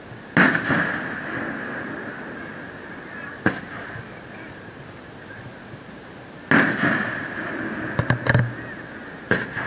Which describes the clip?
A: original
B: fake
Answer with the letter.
A